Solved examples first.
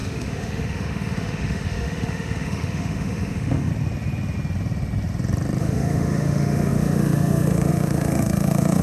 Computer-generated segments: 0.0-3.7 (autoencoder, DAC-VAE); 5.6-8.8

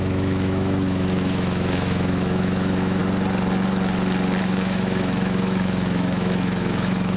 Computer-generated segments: 0.0-3.0 (autoencoder, DAC-VAE); 4.4-7.2

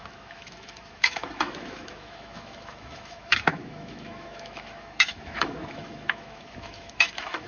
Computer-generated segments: 0.0-7.5 (autoencoder, DAC-VAE)

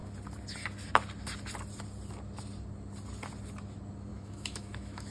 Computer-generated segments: 4.1-5.1 (autoencoder, DAC-VAE)

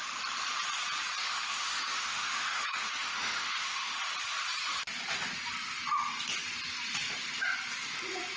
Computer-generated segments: 1.2-4.0 (autoencoder, DAC-VAE)

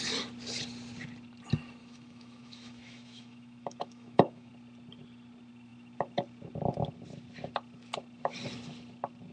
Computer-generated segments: 1.8-4.5 (autoencoder, DAC-VAE)

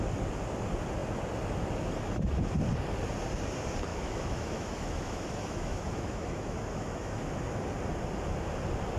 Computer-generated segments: 3.9-7.5 (autoencoder, DAC-VAE)

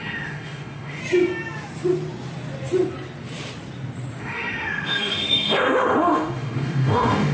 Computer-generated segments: 0.0-1.0 (autoencoder, DAC-VAE); 4.2-7.3